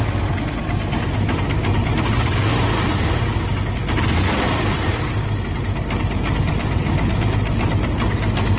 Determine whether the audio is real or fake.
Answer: real